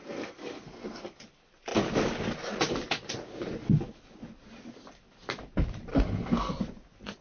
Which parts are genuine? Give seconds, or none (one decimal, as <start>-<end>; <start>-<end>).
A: 1.2-5.9; 6.5-7.2